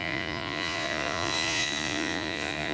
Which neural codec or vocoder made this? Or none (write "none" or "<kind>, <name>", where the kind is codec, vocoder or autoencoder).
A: vocoder, Vocos